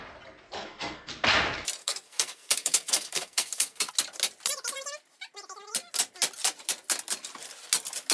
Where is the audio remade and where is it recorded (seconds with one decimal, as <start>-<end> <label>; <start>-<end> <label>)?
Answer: 0.0-0.6 recorded; 0.6-1.1 remade; 1.1-1.8 recorded; 1.8-3.9 remade; 3.9-8.1 recorded

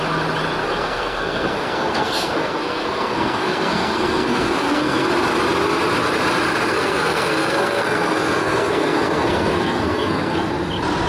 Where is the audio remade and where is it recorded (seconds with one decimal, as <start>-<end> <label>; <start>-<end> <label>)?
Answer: 0.0-0.6 recorded; 0.6-5.1 remade; 5.1-6.7 recorded; 6.7-10.5 remade; 10.5-11.1 recorded

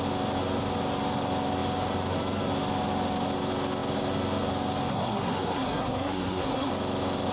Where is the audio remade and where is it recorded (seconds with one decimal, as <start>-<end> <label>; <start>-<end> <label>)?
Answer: 0.0-4.9 recorded; 4.9-6.7 remade; 6.7-7.3 recorded

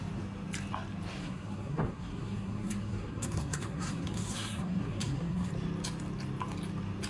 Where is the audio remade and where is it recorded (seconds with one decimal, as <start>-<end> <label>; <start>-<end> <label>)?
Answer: 0.0-1.2 recorded; 1.2-5.5 remade; 5.5-7.1 recorded

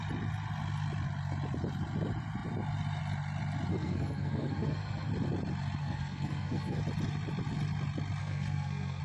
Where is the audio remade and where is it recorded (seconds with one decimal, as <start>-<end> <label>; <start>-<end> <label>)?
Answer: 0.0-3.7 recorded; 3.7-5.1 remade; 5.1-5.8 recorded; 5.8-6.8 remade; 6.8-8.2 recorded; 8.2-9.0 remade

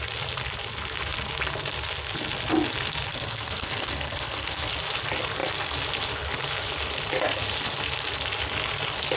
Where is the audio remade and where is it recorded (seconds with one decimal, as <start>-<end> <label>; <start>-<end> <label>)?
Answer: 0.0-3.1 recorded; 3.1-4.7 remade; 4.7-9.2 recorded

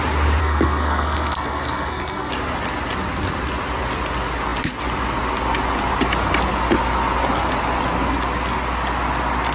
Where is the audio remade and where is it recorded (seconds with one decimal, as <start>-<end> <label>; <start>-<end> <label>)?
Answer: 0.0-0.4 recorded; 0.4-2.3 remade; 2.3-9.5 recorded

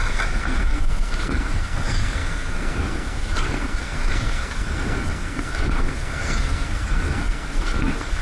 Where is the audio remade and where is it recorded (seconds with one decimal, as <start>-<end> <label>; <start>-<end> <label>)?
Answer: 0.0-8.2 remade